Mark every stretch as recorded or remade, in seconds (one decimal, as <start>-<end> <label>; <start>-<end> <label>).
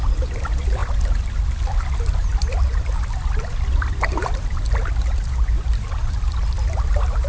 0.0-2.3 recorded; 2.3-6.0 remade; 6.0-7.3 recorded